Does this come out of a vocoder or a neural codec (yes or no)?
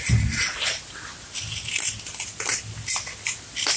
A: no